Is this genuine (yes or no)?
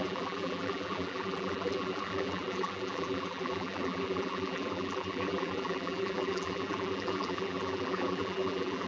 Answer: no